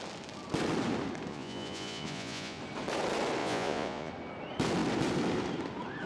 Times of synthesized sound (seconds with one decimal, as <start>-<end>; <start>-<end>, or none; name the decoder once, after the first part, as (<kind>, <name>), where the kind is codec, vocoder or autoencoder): 1.3-2.6 (vocoder, Vocos); 3.4-4.1